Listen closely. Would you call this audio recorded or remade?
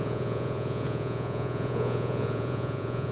remade